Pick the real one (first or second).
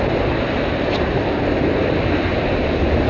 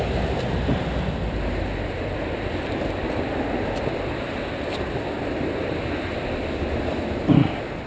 second